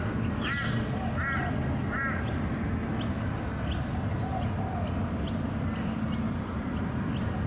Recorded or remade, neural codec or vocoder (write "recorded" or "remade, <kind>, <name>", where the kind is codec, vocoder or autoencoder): recorded